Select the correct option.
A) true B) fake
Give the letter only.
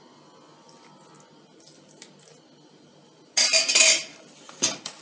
A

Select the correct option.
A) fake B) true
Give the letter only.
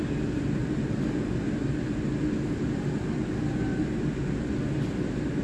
B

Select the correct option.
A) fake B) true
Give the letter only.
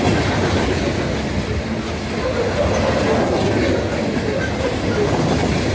B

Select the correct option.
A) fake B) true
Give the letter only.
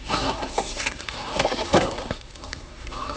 A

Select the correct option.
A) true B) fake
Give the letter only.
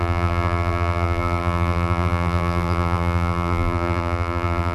B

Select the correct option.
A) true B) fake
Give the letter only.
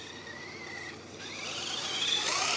B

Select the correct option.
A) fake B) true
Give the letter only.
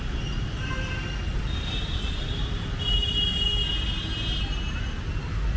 B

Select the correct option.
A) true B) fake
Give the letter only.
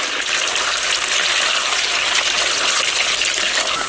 A